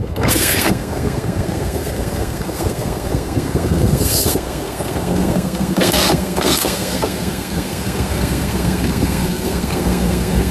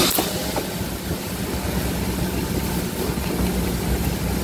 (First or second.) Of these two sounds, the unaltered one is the second